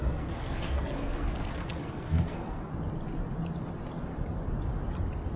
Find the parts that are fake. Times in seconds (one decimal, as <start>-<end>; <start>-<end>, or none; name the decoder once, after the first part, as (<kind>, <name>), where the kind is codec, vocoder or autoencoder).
0.0-2.7 (codec, SNAC)